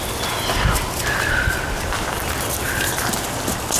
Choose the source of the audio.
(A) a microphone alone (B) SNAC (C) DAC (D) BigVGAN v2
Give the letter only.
A